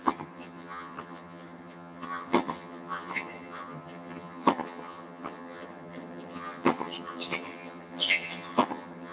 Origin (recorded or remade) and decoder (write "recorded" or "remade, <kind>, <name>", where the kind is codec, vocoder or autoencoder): remade, vocoder, HiFi-GAN